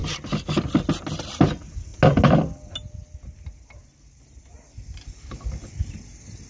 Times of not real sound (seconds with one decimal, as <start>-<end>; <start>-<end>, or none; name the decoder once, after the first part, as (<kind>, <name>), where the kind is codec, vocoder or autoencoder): none